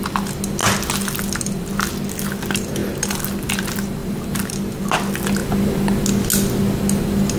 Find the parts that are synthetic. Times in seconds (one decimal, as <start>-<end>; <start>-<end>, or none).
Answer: 4.0-4.8